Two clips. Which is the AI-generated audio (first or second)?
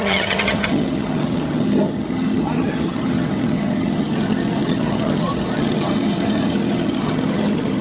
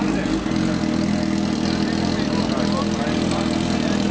first